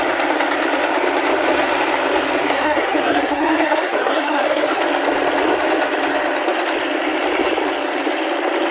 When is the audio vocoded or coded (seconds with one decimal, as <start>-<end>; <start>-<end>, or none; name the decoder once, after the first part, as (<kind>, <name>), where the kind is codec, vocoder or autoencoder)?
2.4-4.8 (codec, SNAC)